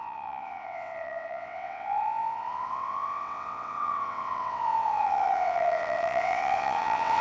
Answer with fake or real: fake